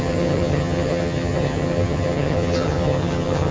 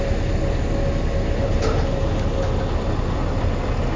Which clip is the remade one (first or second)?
first